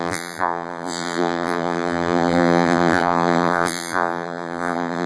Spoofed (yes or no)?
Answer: yes